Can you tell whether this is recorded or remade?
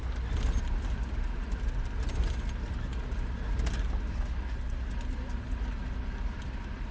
recorded